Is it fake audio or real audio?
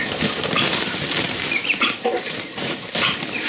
fake